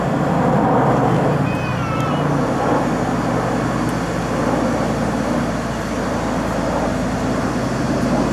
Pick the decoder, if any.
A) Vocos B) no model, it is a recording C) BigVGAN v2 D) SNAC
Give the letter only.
B